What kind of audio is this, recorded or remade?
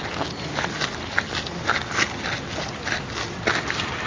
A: recorded